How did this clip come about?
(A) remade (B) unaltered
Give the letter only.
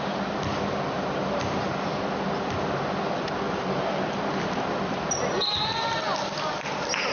B